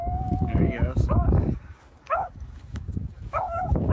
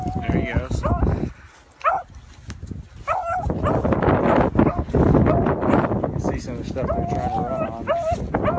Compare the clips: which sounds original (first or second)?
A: second